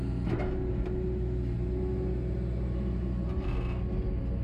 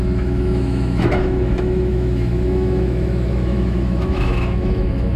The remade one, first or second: second